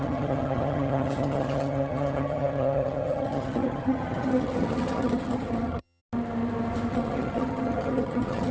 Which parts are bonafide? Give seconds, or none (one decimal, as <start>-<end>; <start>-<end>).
6.0-6.9